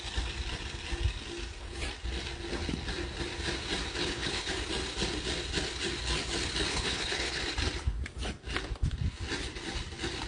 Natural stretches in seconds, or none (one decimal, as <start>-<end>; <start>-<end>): 0.0-4.0; 4.5-6.7; 7.4-10.3